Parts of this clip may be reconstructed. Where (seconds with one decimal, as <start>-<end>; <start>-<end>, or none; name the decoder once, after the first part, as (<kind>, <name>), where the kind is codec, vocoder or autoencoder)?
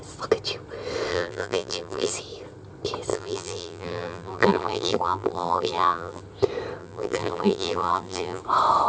1.1-2.1 (vocoder, BigVGAN v2); 3.1-6.2; 6.8-8.4